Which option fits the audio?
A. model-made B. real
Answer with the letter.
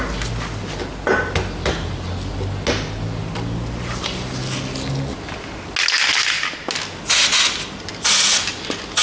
B